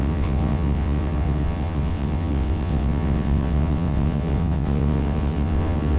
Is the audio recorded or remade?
remade